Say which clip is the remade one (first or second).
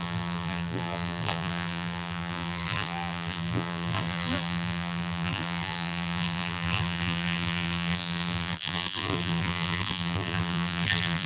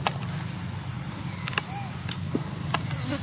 first